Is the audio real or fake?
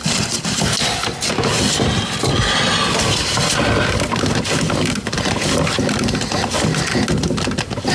real